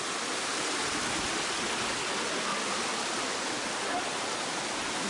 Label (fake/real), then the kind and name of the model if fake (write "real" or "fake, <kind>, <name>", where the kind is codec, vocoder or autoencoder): real